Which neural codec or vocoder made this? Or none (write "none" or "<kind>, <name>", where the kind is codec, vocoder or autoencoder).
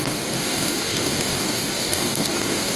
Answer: codec, DAC